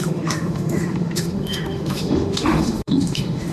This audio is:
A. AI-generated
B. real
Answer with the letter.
A